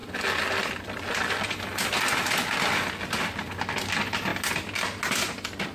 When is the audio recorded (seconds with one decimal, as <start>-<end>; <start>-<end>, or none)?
0.0-5.7